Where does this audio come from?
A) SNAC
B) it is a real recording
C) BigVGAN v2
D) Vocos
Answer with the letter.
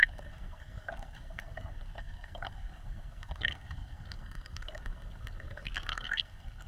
A